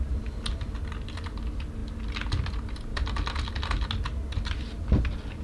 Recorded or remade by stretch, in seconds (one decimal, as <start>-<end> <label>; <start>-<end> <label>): 0.0-5.4 recorded